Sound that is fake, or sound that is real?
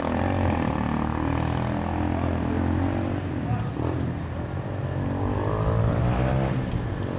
real